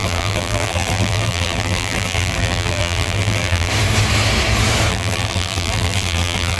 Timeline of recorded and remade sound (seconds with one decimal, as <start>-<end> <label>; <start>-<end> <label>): 0.0-3.7 remade; 3.7-4.9 recorded; 4.9-6.6 remade